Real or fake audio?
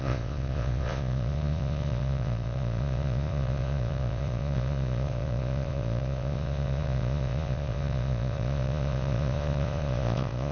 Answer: fake